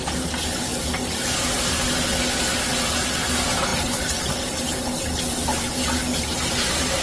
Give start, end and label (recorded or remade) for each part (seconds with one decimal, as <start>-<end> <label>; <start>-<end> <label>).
0.0-7.0 recorded

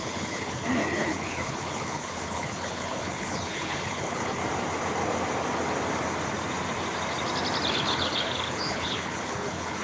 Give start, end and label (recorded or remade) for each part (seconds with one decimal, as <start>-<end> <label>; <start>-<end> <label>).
0.0-4.4 remade; 4.4-7.7 recorded; 7.7-9.8 remade

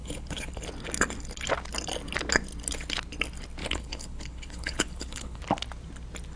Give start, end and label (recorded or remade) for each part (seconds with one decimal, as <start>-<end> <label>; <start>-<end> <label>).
0.0-0.5 remade; 0.5-3.6 recorded; 3.6-5.4 remade; 5.4-6.4 recorded

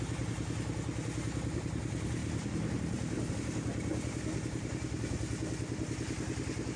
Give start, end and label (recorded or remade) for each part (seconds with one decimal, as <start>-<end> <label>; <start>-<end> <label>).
0.0-6.8 recorded

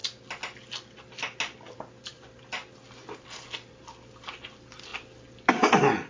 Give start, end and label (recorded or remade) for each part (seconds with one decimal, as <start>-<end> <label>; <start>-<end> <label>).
0.0-4.9 recorded; 4.9-5.5 remade; 5.5-6.1 recorded